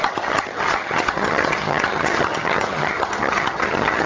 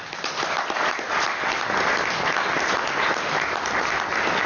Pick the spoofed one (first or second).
first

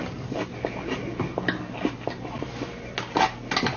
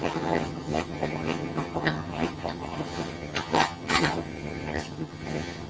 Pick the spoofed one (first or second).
second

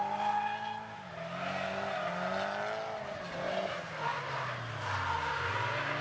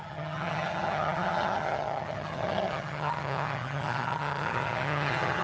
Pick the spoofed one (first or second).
second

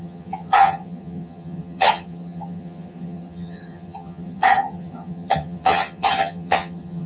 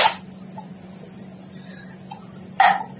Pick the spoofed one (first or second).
first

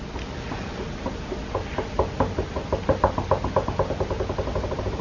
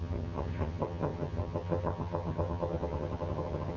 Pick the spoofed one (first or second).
second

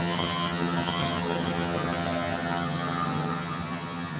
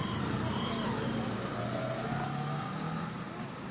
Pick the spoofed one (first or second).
first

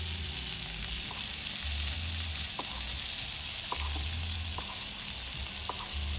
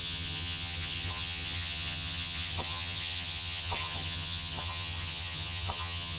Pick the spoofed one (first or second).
second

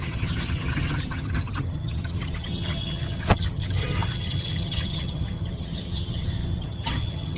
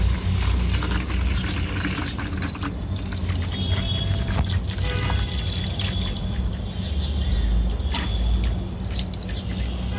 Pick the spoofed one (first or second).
first